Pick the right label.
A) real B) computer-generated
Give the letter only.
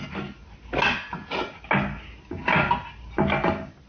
A